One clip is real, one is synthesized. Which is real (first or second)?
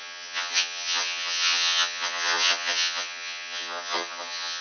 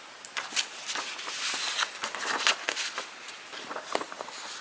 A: second